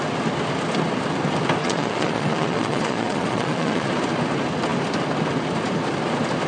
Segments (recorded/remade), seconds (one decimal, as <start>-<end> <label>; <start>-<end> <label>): 0.0-1.6 recorded; 1.6-3.9 remade; 3.9-6.5 recorded